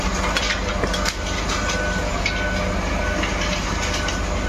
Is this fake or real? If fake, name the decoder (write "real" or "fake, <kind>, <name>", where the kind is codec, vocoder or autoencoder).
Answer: real